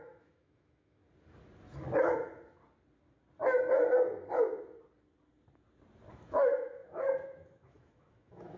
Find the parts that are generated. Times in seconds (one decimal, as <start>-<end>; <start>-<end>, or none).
0.0-1.0; 6.1-8.6